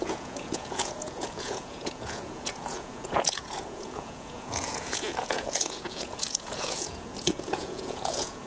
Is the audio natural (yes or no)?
no